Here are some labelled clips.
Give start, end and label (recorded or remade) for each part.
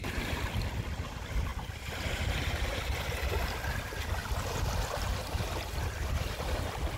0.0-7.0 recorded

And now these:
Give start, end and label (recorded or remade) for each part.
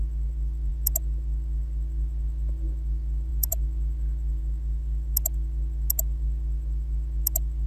0.0-3.3 recorded; 3.3-4.4 remade; 4.4-7.7 recorded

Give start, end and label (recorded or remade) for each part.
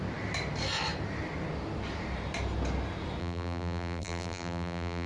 0.0-3.2 recorded; 3.2-5.1 remade